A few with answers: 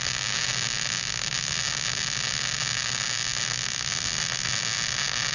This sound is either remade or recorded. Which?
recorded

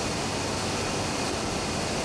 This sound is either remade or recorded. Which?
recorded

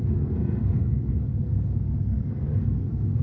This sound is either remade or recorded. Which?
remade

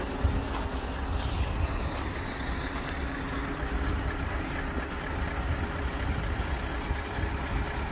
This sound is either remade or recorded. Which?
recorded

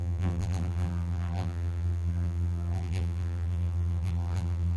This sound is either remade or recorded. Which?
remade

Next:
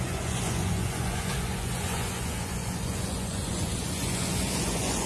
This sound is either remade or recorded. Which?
remade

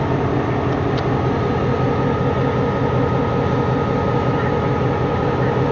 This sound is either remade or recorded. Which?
recorded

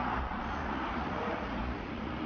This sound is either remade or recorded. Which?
remade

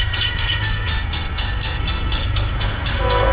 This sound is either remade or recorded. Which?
remade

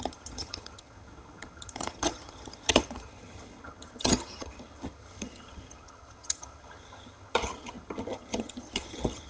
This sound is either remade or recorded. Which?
remade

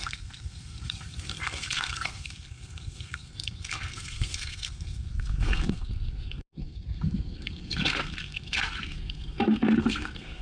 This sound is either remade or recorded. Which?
remade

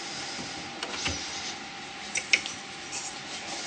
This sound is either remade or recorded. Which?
recorded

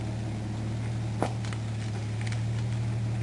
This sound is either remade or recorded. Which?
recorded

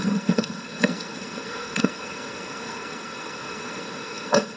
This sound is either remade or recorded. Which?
remade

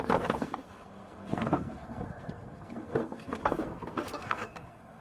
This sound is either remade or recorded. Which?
remade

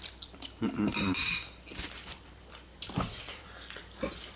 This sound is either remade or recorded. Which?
remade